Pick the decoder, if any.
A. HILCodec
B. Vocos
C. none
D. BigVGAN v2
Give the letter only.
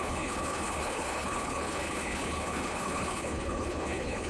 A